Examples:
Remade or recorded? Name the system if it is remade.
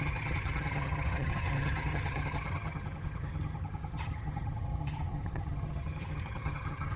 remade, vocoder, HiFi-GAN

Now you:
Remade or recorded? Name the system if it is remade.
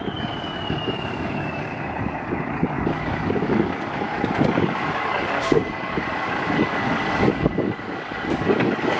remade, codec, DAC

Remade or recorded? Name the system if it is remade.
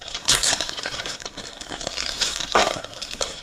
remade, codec, SNAC